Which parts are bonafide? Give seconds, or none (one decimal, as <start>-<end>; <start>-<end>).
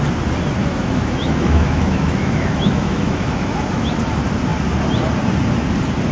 0.0-0.6; 3.9-6.1